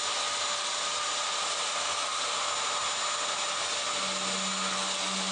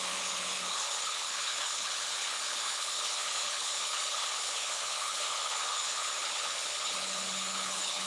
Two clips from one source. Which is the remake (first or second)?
second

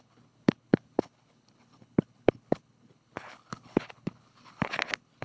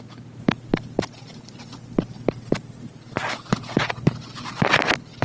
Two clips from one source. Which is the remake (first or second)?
first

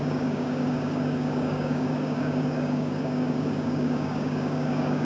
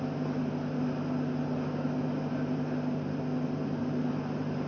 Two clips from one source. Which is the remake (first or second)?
first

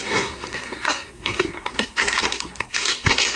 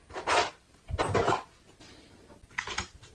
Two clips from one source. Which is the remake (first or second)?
first